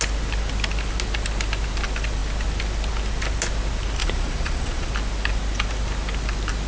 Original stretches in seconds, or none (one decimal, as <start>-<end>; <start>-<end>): 0.0-4.0; 4.9-6.7